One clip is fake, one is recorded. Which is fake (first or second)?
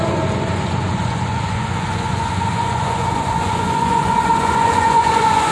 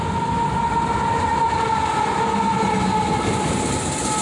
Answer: first